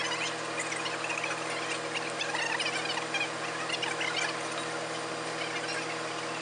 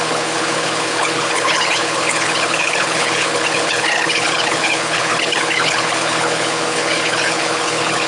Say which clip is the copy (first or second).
second